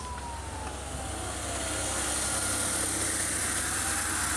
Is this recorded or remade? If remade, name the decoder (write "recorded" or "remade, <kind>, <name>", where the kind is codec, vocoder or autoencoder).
recorded